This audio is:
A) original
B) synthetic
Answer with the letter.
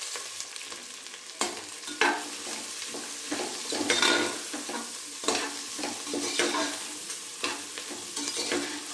A